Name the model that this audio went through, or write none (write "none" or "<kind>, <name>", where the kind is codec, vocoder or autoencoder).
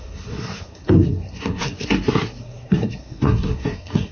codec, SNAC